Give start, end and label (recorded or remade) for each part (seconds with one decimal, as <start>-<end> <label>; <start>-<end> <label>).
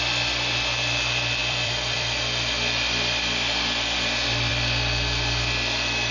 0.0-1.4 recorded; 1.4-2.2 remade; 2.2-6.1 recorded